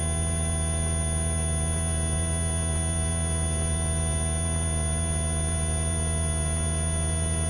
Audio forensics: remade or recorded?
recorded